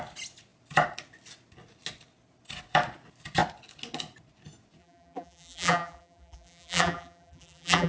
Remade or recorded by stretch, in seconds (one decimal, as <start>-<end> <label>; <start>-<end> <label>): 0.0-4.8 recorded; 4.8-7.9 remade